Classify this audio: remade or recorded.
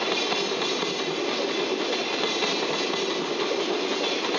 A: recorded